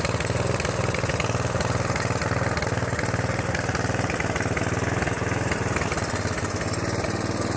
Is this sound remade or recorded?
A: recorded